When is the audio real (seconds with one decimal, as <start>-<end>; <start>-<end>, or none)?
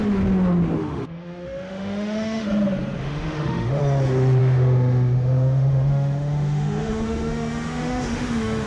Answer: 0.0-0.8; 2.5-3.0; 3.8-4.4